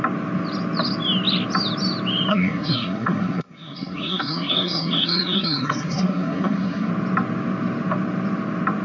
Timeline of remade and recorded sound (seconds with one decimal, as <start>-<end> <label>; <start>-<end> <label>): 0.0-2.3 recorded; 2.3-6.9 remade; 6.9-8.8 recorded